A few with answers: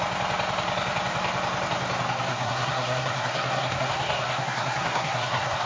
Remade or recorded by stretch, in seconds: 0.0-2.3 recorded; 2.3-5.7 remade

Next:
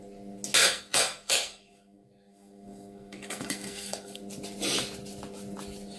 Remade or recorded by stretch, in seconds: 0.0-0.6 recorded; 0.6-4.2 remade; 4.2-6.0 recorded